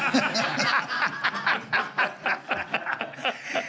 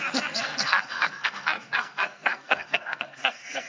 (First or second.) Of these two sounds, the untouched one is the first